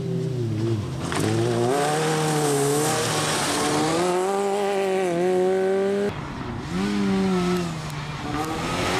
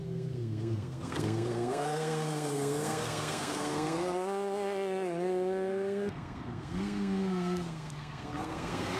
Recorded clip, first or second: first